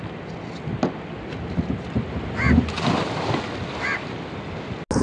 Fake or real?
real